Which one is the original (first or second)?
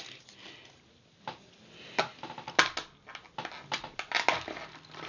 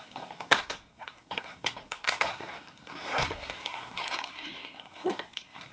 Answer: first